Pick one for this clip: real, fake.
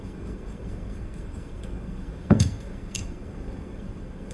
fake